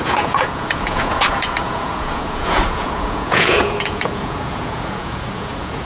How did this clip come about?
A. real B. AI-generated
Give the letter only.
B